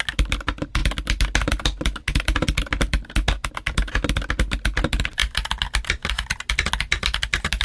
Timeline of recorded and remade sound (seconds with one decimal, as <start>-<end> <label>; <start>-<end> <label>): 0.0-7.6 recorded